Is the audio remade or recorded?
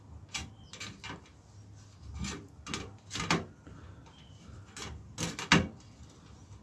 recorded